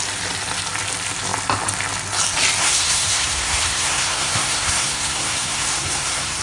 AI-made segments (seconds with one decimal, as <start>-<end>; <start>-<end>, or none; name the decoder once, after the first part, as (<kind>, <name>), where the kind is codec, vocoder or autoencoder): 2.6-6.4 (codec, SNAC)